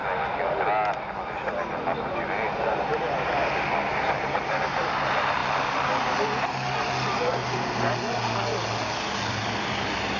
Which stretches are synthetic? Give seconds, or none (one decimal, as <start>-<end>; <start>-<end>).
1.1-2.9; 3.9-5.4; 9.3-10.2